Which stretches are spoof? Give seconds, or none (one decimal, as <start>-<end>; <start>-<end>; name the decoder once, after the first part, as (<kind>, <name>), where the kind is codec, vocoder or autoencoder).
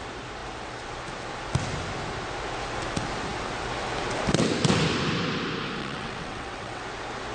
5.8-6.8 (vocoder, WaveNeXt)